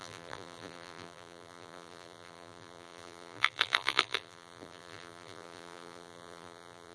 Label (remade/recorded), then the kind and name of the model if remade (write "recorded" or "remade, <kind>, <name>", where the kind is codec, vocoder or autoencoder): remade, vocoder, BigVGAN v2